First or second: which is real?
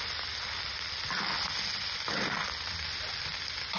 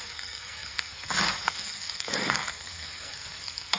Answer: first